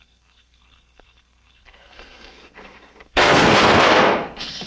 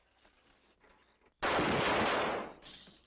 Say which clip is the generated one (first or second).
first